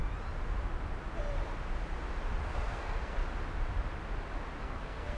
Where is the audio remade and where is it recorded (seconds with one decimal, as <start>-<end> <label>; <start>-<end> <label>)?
0.0-2.5 recorded; 2.5-3.2 remade; 3.2-4.6 recorded; 4.6-5.2 remade